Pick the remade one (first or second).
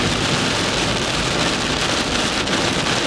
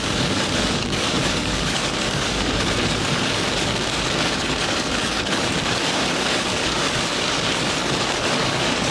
second